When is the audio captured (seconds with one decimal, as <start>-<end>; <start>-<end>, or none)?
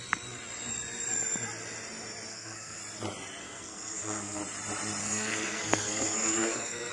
0.0-2.3; 2.8-3.4; 4.4-5.0